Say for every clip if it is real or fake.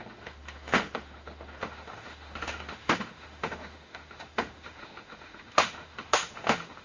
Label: fake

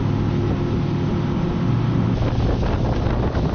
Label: real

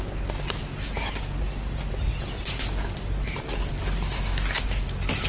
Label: real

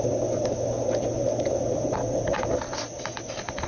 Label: real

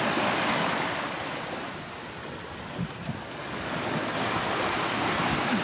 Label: real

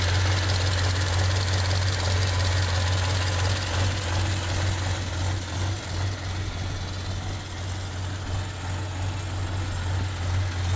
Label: real